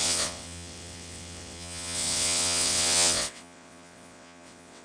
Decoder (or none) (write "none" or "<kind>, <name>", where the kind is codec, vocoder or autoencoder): vocoder, WaveNeXt